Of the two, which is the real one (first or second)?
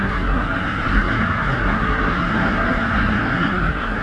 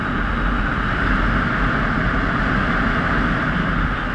second